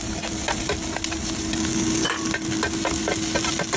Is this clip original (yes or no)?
yes